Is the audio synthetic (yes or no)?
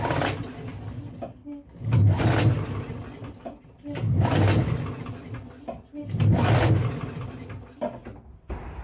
no